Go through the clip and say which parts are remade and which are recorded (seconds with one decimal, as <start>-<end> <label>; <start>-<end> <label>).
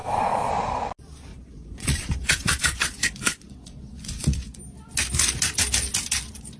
0.0-0.5 remade; 0.5-1.3 recorded; 1.3-4.6 remade; 4.6-6.6 recorded